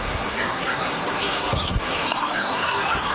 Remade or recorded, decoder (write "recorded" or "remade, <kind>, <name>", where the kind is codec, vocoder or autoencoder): remade, codec, SNAC